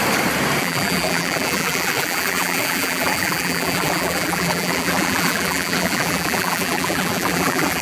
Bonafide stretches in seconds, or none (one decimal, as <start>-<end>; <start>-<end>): 0.0-0.6